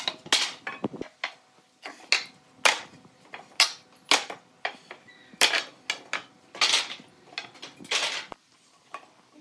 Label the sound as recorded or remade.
recorded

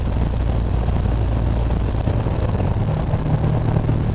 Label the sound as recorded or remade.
recorded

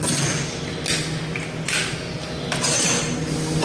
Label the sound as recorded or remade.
recorded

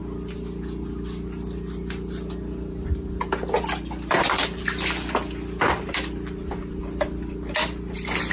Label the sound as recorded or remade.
recorded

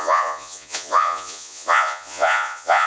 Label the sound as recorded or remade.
remade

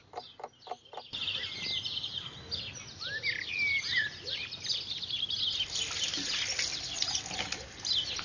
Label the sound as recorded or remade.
recorded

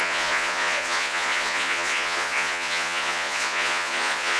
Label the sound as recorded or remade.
remade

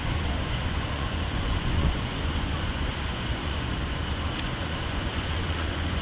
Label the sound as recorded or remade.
remade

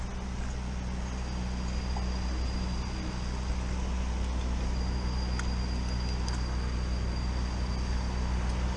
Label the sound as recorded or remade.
recorded